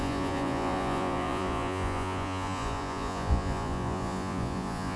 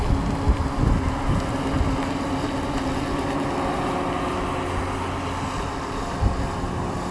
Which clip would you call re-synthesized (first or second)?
first